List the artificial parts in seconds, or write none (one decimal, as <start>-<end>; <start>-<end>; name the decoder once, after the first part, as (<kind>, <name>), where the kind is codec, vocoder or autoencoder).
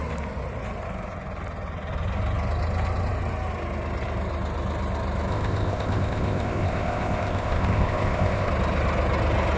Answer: 5.3-8.5 (codec, ZipCodec)